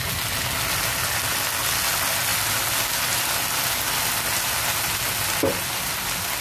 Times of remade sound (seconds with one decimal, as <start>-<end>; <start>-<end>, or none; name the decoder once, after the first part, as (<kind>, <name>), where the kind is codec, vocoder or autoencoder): none